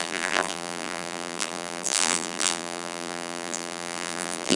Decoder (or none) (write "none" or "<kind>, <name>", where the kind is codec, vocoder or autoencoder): vocoder, BigVGAN v2